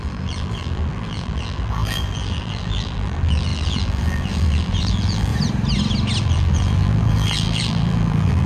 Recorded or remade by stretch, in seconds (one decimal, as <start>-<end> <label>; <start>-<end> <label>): 0.0-5.3 remade; 5.3-6.2 recorded; 6.2-8.5 remade